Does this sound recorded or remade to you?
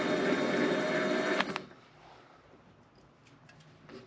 recorded